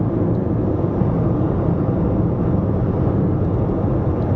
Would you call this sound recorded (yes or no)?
yes